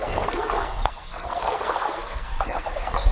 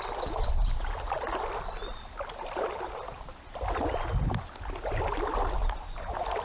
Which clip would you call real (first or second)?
second